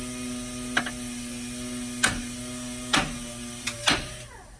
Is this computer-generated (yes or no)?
no